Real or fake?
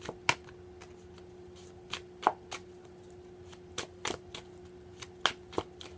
real